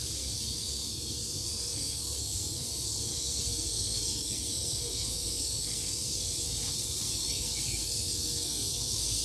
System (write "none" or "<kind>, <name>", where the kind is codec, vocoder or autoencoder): codec, SNAC